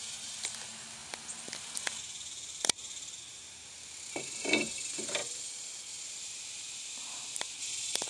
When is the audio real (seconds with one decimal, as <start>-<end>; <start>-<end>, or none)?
0.0-8.1

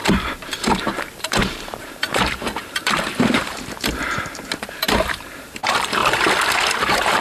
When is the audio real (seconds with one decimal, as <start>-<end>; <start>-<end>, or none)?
6.0-6.8

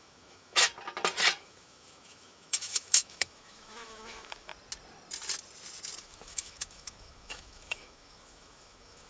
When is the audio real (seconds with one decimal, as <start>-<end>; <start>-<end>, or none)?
0.7-1.4; 4.5-6.0

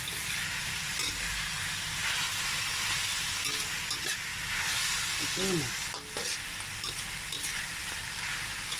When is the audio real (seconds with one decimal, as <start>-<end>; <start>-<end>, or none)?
0.0-2.0; 2.6-7.8; 8.3-8.8

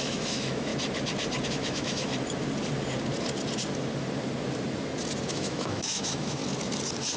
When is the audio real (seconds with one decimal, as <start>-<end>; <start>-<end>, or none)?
0.7-1.5; 2.1-5.3; 6.4-7.2

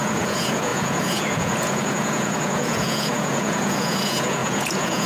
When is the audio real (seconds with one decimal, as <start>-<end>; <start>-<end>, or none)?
none

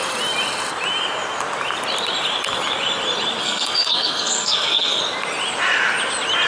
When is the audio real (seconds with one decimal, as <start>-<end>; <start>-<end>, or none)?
0.0-3.4; 5.0-6.5

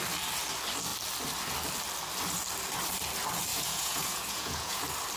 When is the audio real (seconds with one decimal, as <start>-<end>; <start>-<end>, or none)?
0.0-3.5; 4.8-5.2